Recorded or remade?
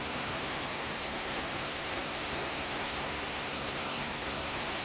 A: remade